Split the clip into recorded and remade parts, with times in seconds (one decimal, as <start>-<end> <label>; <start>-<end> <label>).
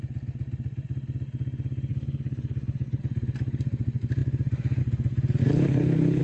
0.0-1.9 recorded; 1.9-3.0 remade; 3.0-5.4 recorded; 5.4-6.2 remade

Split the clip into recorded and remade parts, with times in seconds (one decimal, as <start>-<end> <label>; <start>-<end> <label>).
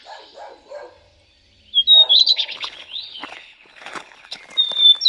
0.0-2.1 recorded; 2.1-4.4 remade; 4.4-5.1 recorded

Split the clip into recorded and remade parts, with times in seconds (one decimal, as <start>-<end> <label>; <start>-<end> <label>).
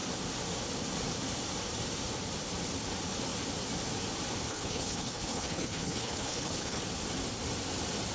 0.0-4.5 recorded; 4.5-6.8 remade; 6.8-8.1 recorded